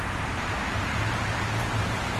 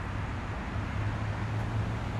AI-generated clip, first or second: first